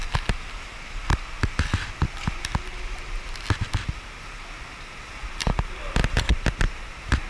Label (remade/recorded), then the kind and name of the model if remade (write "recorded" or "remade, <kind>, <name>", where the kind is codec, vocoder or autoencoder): recorded